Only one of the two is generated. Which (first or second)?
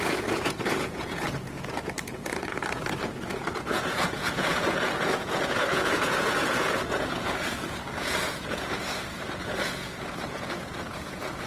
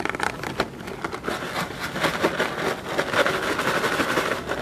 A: first